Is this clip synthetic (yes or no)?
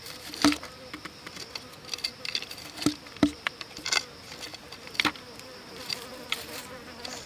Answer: yes